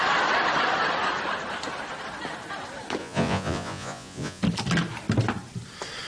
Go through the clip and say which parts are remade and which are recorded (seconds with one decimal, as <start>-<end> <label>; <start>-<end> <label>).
0.0-3.0 recorded; 3.0-4.4 remade; 4.4-6.1 recorded